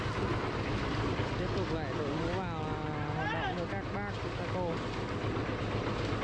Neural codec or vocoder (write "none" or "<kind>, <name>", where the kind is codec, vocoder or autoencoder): none